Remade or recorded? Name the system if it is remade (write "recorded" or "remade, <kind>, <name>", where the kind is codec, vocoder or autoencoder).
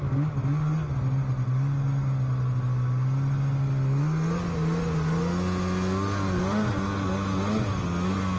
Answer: recorded